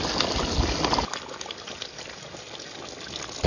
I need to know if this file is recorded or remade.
recorded